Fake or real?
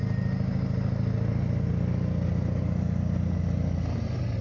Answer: real